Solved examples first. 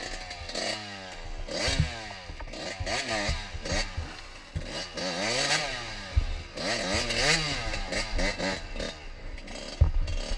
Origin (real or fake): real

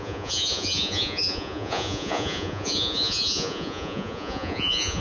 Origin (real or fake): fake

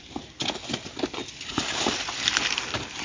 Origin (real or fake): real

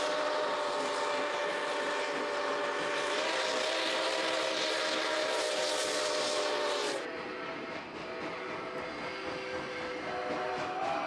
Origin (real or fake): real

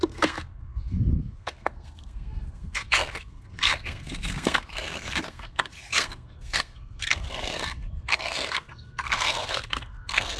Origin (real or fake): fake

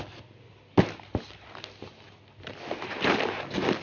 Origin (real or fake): real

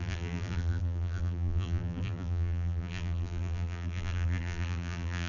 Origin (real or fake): fake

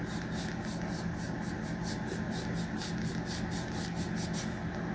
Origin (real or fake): real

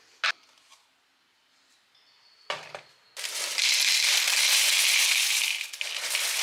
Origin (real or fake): real